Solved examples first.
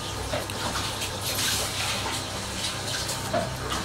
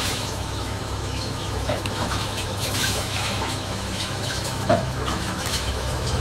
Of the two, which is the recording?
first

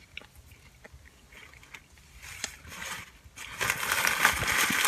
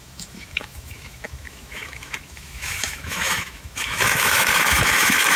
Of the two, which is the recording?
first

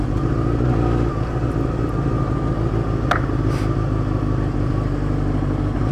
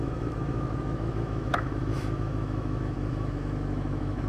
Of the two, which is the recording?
first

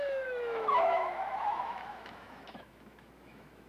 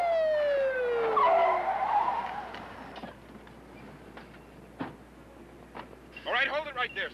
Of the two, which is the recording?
second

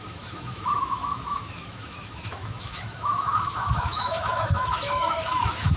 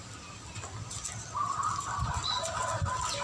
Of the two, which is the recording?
second